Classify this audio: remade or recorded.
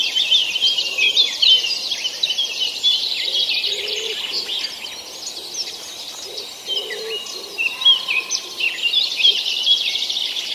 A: recorded